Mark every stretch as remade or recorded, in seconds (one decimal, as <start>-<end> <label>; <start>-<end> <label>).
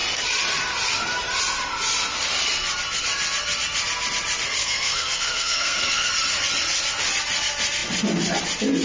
0.0-4.6 recorded; 4.6-6.1 remade; 6.1-8.8 recorded